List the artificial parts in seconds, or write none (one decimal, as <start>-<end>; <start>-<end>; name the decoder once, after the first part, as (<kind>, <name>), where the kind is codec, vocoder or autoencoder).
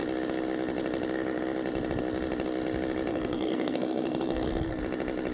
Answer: 3.1-4.8 (codec, SNAC)